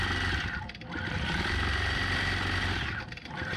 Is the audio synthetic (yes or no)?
yes